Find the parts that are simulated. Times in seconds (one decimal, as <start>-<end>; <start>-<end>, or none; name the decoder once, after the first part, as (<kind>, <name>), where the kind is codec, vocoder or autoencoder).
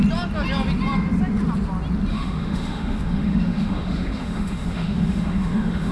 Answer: 2.1-5.9 (autoencoder, DAC-VAE)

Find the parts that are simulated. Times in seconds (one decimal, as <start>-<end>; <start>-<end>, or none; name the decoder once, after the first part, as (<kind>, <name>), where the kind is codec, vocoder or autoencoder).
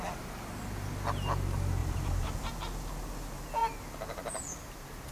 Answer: 1.8-2.5 (vocoder, BigVGAN v2)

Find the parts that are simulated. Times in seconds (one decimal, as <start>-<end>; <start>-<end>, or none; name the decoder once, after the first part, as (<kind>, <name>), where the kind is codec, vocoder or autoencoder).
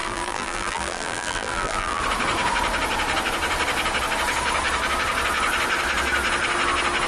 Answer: 0.0-2.0 (vocoder, BigVGAN v2)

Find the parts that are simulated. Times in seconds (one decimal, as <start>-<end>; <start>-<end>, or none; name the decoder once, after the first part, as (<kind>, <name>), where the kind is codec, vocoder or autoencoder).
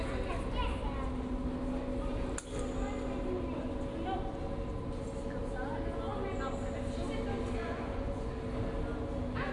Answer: 7.6-8.3 (vocoder, Vocos)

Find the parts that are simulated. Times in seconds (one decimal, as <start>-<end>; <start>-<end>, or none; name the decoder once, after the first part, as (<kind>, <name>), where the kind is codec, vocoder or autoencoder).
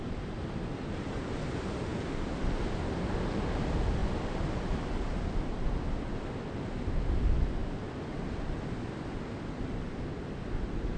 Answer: none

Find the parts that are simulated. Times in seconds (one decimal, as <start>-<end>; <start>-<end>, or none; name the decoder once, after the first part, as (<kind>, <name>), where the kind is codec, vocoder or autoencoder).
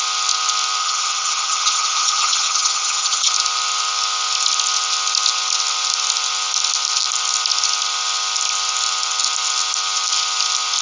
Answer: 0.8-3.3 (vocoder, HiFi-GAN)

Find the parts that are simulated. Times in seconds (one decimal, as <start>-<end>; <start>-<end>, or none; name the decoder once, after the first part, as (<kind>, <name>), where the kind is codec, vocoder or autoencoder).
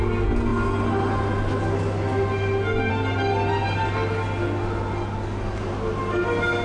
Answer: none